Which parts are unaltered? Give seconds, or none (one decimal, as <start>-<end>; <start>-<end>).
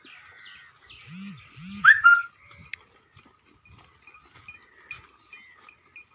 0.0-6.1